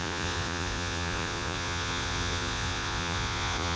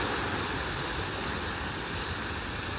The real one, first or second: second